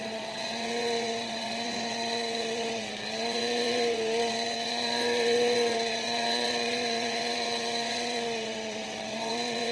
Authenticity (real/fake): fake